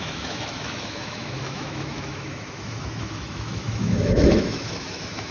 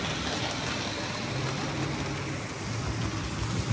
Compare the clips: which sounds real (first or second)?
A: second